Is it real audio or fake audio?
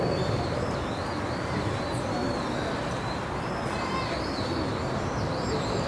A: real